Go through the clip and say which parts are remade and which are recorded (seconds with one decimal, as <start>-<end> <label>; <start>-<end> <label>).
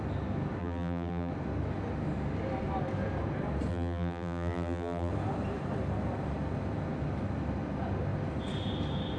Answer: 0.0-0.6 recorded; 0.6-1.3 remade; 1.3-3.7 recorded; 3.7-5.1 remade; 5.1-9.2 recorded